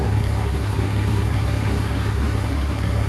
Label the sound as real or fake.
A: fake